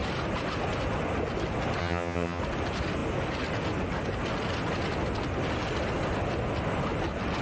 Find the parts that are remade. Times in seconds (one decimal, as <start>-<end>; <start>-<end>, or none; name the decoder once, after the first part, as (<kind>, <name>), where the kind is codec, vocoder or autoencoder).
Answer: 1.8-2.4 (vocoder, HiFi-GAN)